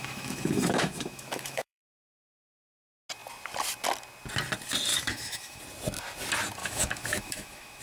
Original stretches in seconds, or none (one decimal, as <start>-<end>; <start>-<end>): 1.9-4.9; 5.6-6.6